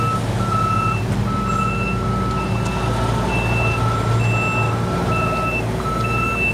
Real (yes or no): yes